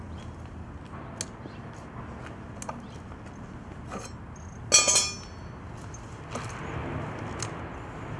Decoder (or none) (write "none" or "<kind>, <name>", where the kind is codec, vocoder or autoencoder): none